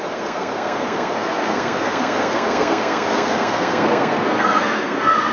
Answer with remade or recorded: remade